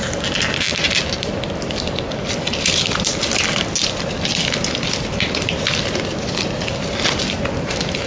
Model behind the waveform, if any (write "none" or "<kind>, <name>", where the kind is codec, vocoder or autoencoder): vocoder, BigVGAN v2